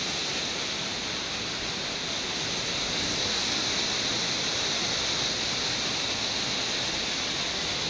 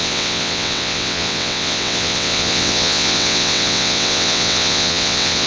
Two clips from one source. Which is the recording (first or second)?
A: first